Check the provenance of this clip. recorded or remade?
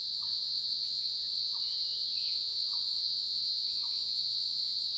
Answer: remade